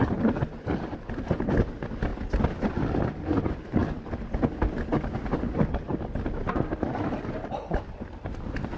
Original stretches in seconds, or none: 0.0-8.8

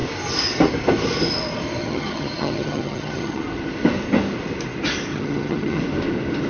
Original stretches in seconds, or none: 0.0-1.8; 3.4-5.1; 5.8-6.5